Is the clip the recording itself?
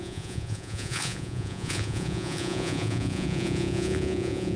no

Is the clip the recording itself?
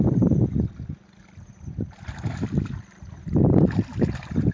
yes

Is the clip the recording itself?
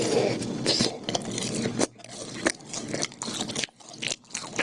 yes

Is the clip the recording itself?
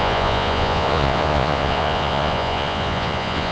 no